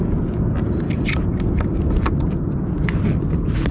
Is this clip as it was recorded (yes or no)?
yes